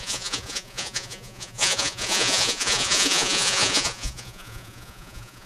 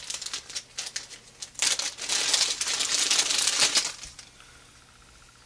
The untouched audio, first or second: second